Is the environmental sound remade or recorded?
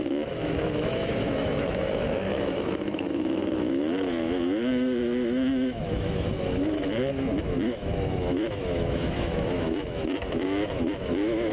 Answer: remade